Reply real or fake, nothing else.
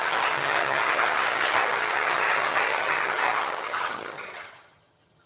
fake